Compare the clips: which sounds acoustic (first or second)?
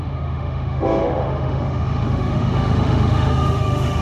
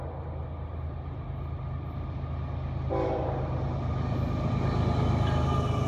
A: second